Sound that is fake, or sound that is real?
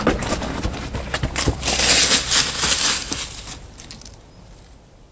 real